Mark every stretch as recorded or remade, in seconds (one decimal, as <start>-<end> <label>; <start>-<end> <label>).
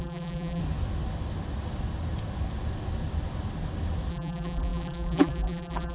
0.0-0.6 remade; 0.6-4.1 recorded; 4.1-5.9 remade